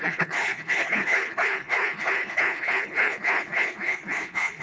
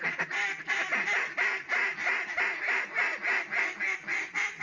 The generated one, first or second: first